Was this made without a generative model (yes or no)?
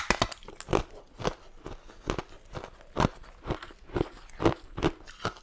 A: yes